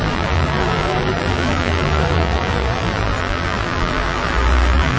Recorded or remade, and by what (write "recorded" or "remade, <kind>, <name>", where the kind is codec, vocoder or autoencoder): remade, vocoder, BigVGAN v2